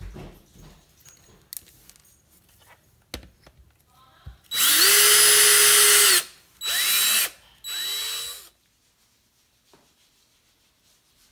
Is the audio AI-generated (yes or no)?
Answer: no